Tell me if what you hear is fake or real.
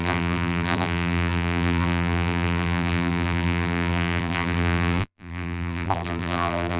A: fake